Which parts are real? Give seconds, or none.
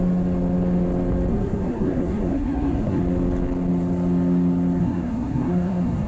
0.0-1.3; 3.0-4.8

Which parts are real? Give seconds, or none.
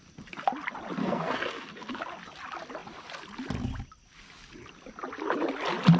0.0-1.0; 2.0-6.0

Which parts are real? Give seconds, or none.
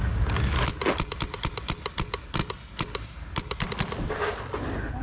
0.0-5.0